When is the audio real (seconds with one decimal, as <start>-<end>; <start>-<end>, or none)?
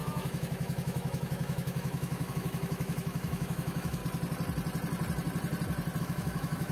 4.0-6.0